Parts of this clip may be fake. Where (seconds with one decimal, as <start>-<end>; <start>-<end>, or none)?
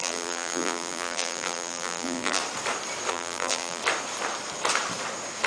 0.0-2.4; 3.1-3.8